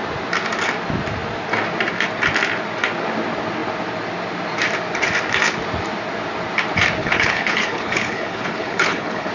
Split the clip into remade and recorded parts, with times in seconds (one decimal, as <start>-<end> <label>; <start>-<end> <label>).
0.0-7.0 recorded; 7.0-9.3 remade